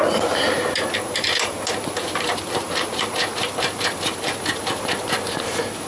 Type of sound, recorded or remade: remade